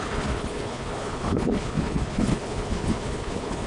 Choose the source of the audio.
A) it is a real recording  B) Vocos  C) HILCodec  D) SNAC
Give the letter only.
C